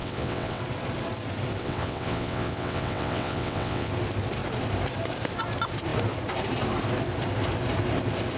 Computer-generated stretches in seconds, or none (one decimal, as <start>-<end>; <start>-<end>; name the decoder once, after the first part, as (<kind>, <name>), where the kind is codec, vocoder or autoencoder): 0.0-0.6 (vocoder, WaveNeXt); 1.6-3.9

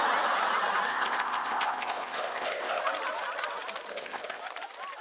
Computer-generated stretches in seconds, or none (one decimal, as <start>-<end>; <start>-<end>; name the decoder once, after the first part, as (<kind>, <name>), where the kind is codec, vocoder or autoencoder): 0.9-2.8 (codec, ZipCodec); 3.9-4.4

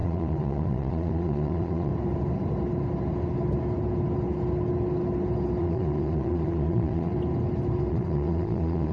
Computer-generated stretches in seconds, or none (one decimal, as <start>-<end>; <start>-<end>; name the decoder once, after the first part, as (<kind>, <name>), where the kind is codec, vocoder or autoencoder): 0.0-1.9 (vocoder, Vocos); 5.6-7.1; 7.9-8.9

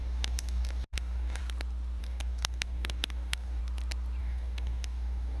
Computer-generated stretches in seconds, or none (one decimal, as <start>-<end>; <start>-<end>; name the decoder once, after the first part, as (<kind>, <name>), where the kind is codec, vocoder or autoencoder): 0.0-1.4 (codec, DAC); 2.0-3.6; 4.2-5.4

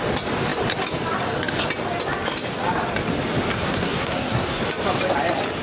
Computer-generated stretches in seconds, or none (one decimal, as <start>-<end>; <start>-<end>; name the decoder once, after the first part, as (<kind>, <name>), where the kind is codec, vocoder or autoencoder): 3.5-4.6 (codec, SNAC)

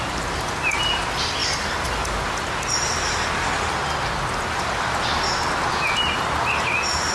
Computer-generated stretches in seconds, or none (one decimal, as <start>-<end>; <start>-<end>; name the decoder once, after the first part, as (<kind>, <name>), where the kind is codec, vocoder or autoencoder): none